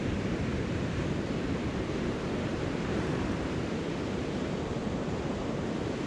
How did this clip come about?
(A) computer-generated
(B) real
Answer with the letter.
A